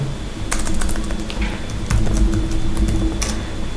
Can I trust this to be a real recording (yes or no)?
yes